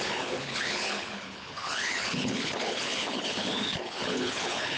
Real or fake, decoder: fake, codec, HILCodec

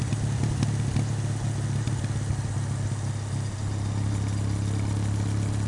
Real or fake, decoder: real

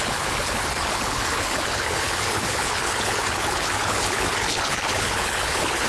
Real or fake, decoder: fake, codec, HILCodec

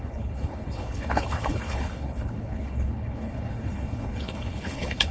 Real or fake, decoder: fake, codec, HILCodec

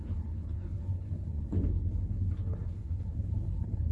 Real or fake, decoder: fake, codec, HILCodec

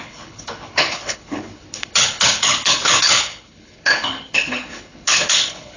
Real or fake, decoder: fake, codec, HILCodec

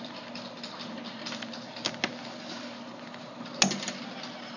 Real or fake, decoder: real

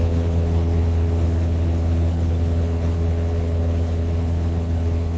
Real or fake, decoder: fake, codec, HILCodec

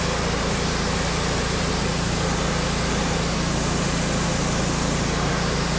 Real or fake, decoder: real